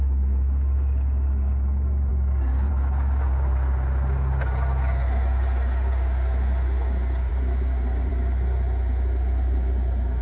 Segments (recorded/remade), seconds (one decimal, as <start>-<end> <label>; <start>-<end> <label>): 0.0-10.2 recorded

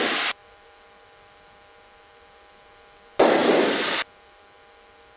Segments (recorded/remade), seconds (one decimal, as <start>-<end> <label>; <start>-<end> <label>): 0.0-5.2 recorded

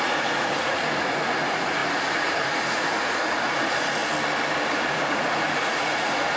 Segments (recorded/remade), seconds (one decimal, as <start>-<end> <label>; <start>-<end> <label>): 0.0-4.0 remade; 4.0-4.7 recorded; 4.7-6.4 remade

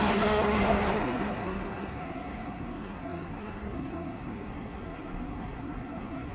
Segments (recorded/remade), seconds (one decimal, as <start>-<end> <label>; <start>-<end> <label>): 0.0-6.3 remade

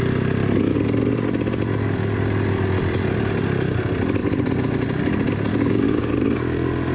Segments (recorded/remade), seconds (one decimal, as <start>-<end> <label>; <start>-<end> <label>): 0.0-5.5 recorded; 5.5-6.1 remade; 6.1-6.9 recorded

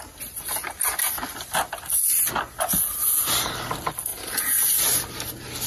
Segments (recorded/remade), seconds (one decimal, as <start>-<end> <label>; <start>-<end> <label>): 0.0-3.0 recorded; 3.0-3.5 remade; 3.5-4.1 recorded; 4.1-5.3 remade; 5.3-5.7 recorded

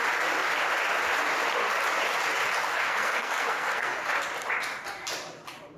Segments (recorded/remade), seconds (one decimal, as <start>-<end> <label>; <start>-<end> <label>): 0.0-2.7 recorded; 2.7-4.1 remade; 4.1-5.8 recorded